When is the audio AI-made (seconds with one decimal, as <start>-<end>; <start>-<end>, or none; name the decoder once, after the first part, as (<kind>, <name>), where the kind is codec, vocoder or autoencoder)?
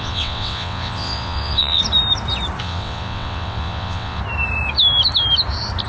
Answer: 0.0-1.8 (vocoder, WaveNeXt); 2.6-4.2